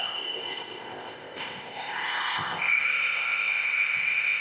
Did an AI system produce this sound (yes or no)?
yes